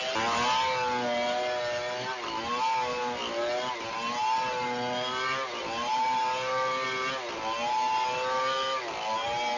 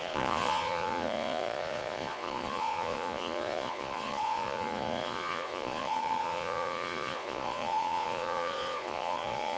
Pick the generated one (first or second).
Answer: second